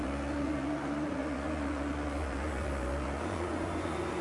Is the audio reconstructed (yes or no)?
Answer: yes